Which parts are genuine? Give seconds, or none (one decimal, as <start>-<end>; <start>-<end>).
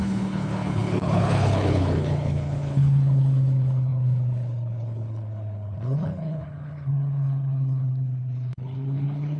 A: none